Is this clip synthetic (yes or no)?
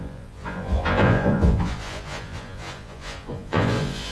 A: yes